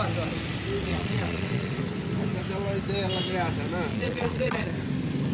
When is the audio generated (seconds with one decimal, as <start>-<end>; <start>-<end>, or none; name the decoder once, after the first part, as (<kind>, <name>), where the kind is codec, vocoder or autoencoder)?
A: 0.9-1.8 (vocoder, Vocos); 3.9-4.7

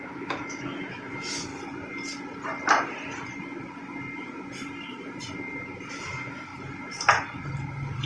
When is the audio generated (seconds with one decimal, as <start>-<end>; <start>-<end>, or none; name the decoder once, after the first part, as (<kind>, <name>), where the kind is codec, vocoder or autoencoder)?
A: 0.0-1.5 (autoencoder, DAC-VAE); 5.9-6.5